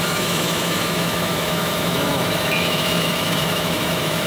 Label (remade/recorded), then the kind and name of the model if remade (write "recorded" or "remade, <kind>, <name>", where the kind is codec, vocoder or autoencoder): remade, autoencoder, DAC-VAE